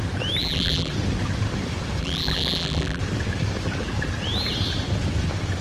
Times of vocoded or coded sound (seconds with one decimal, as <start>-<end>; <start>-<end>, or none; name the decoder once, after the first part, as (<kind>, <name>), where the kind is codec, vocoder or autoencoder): 0.4-0.9 (vocoder, BigVGAN v2); 2.0-3.0